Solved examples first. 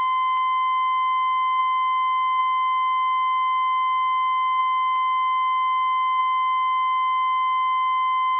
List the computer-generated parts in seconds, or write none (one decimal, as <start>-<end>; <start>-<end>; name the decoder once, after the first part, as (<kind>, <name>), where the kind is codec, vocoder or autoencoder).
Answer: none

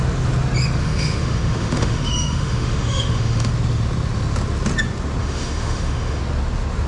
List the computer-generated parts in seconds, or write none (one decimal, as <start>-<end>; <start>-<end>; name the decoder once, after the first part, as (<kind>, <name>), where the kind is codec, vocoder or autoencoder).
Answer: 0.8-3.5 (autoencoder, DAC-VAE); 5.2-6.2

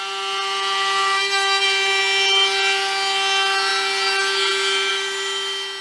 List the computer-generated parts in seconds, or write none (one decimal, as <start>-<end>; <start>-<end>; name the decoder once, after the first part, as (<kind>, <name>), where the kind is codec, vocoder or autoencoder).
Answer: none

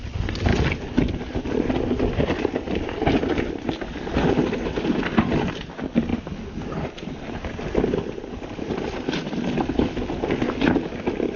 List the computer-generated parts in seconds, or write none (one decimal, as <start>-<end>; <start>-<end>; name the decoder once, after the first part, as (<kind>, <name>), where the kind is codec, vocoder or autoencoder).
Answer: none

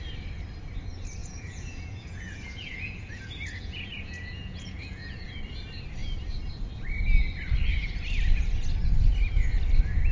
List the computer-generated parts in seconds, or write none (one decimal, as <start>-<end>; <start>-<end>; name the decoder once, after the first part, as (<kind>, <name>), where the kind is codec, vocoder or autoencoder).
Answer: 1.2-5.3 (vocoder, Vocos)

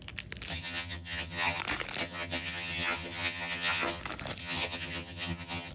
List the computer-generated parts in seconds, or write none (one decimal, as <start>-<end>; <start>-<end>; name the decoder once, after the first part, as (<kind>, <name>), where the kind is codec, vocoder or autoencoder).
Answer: 0.5-1.6 (vocoder, HiFi-GAN); 2.0-4.0; 4.4-5.7

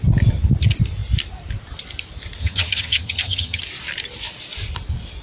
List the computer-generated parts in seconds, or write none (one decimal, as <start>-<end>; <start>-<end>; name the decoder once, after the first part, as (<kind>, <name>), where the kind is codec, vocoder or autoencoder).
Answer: 2.4-3.6 (vocoder, HiFi-GAN)